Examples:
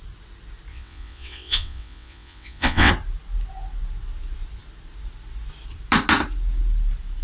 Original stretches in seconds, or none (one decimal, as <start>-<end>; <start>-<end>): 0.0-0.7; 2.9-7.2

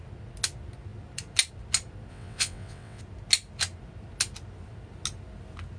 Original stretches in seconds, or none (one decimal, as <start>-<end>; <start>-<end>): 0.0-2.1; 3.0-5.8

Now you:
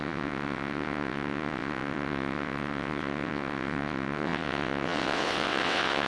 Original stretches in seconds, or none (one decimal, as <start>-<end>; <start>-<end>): none

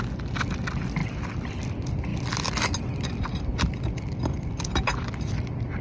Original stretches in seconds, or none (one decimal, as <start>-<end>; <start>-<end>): 0.0-5.8

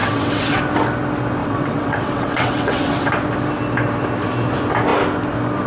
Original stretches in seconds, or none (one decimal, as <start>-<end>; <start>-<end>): 0.6-1.4; 3.1-5.7